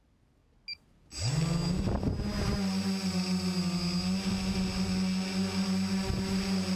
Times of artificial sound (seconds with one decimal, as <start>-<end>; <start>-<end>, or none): none